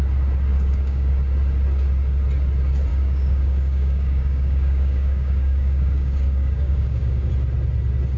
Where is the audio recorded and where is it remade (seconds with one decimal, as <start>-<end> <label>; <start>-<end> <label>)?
0.0-0.5 recorded; 0.5-1.1 remade; 1.1-2.9 recorded; 2.9-7.3 remade; 7.3-8.2 recorded